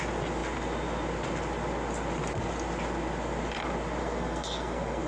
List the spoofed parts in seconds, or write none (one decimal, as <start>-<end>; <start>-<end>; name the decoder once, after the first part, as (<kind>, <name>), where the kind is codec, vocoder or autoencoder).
4.0-5.1 (codec, SNAC)